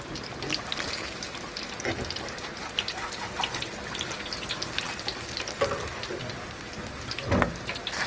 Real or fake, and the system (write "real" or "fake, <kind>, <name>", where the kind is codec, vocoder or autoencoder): real